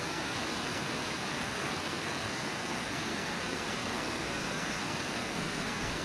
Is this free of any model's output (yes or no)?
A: no